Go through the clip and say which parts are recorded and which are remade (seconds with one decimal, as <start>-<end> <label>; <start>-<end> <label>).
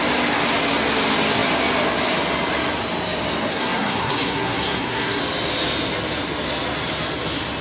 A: 0.0-3.5 recorded; 3.5-5.2 remade; 5.2-7.6 recorded